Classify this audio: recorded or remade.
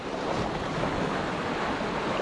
recorded